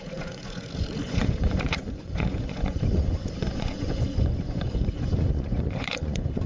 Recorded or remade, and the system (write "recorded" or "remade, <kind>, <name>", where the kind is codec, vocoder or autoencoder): remade, vocoder, Vocos